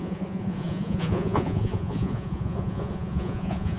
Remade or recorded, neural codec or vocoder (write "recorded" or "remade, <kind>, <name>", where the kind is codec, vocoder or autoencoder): remade, vocoder, Vocos